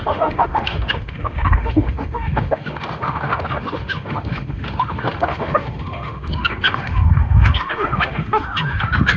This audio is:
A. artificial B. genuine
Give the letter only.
A